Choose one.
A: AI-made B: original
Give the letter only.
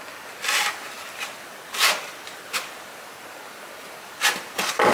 B